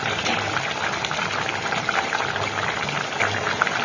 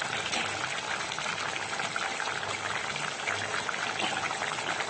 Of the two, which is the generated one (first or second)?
first